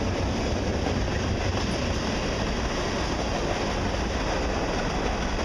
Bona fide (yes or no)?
yes